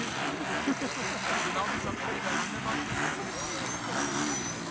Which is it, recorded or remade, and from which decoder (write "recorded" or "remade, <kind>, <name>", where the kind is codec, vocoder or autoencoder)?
recorded